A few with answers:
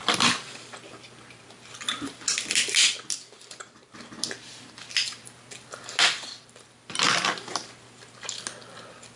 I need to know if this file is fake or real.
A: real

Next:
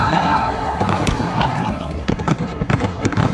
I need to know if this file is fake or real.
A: fake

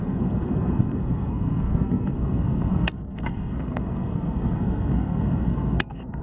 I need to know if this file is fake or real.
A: fake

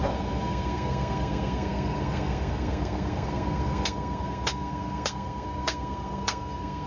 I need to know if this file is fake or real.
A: fake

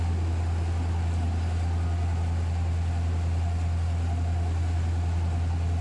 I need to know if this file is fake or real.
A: real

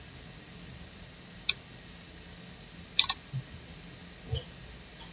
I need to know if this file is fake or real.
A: real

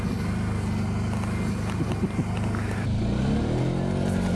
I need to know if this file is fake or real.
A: real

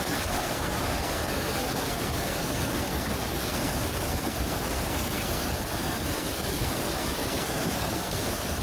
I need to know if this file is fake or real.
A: fake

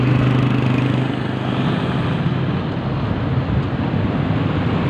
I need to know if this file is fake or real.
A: real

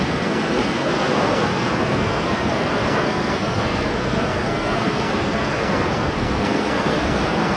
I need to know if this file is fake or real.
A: fake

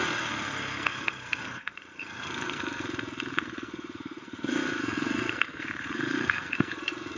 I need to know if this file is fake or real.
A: fake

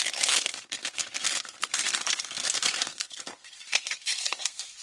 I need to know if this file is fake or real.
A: fake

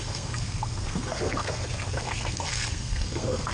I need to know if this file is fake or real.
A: fake